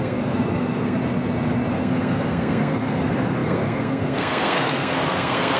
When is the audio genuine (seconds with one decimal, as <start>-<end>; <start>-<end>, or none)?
1.0-1.7